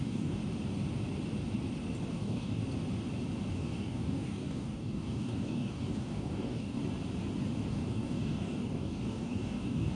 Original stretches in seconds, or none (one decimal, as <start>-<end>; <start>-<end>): 0.4-2.1; 2.6-3.5; 6.8-7.7